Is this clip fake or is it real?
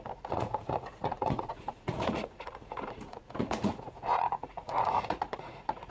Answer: fake